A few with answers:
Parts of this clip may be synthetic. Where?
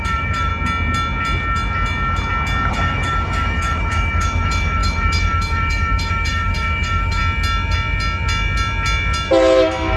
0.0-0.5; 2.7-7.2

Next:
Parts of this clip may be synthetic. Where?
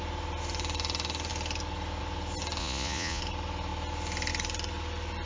2.6-3.2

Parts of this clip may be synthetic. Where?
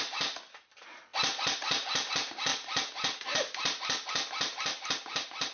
none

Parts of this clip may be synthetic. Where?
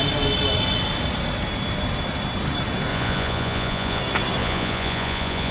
2.9-4.0; 4.4-5.5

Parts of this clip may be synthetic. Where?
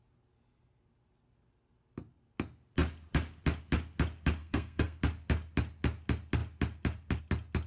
4.4-5.0